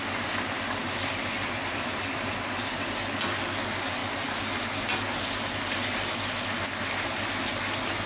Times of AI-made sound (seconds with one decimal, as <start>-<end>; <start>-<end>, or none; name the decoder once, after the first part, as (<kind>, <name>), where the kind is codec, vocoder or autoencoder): 0.8-2.3 (vocoder, BigVGAN v2)